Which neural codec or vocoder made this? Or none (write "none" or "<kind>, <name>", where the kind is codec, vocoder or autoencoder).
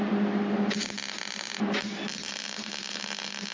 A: none